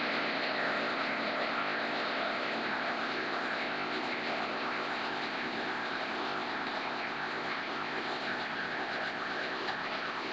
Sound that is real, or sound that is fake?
fake